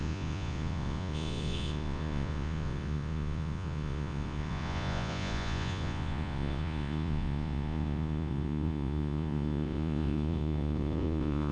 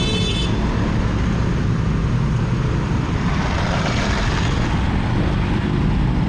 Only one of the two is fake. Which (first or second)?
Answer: first